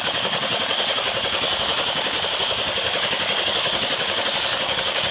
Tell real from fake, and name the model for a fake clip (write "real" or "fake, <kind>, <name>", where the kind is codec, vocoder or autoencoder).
fake, codec, DAC